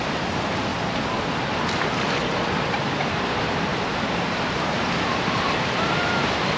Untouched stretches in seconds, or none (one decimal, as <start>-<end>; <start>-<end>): 0.7-2.1